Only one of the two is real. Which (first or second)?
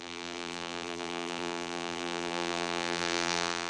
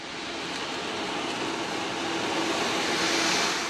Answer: second